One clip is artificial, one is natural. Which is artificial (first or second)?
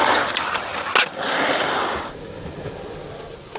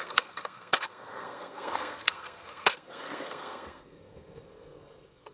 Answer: second